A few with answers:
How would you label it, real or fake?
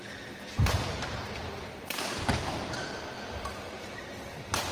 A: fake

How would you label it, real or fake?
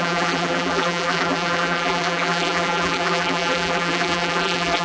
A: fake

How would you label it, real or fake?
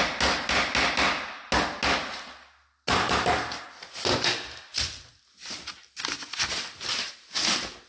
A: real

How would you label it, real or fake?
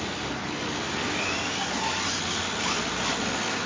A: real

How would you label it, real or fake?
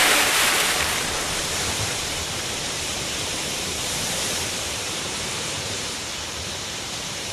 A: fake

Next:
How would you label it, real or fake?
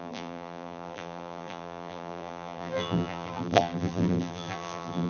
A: fake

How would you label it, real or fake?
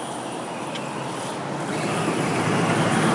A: real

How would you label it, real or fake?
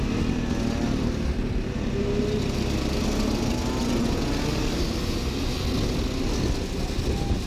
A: real